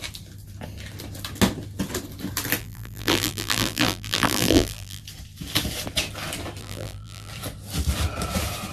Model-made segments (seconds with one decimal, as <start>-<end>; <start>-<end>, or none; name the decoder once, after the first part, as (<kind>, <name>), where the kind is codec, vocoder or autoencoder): 2.6-5.0 (vocoder, BigVGAN v2); 6.6-7.3